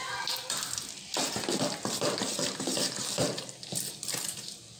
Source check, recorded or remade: recorded